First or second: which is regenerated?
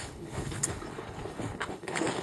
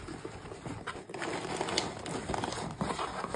first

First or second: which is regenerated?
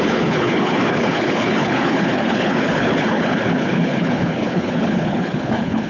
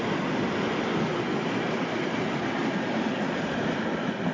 first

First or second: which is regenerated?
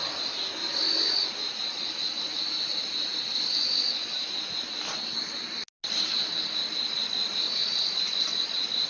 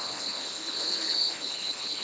second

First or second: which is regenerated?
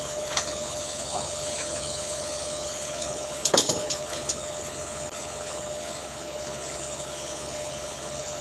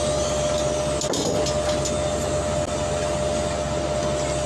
first